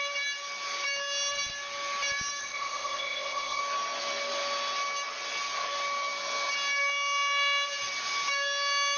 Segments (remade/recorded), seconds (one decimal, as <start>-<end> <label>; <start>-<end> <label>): 0.0-2.4 recorded; 2.4-3.6 remade; 3.6-9.0 recorded